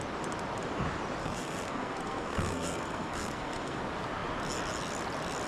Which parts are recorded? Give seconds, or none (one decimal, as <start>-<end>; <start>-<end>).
0.0-1.2; 3.8-5.5